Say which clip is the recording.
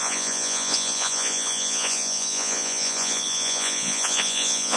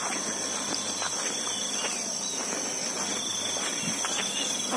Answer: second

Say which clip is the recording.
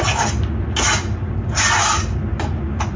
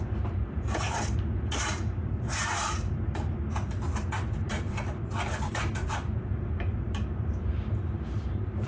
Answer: first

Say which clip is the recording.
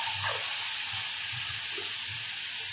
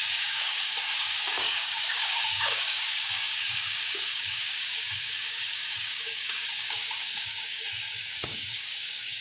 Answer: first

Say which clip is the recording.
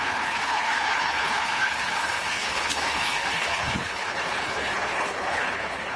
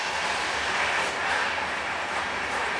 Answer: second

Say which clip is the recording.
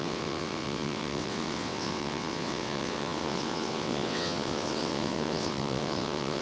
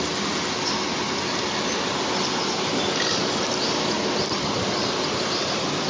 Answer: second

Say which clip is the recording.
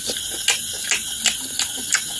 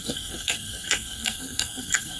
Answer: first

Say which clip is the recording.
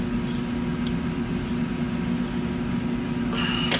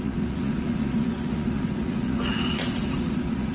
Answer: first